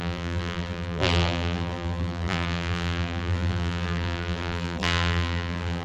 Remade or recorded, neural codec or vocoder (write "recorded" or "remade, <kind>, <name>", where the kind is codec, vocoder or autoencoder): remade, vocoder, BigVGAN v2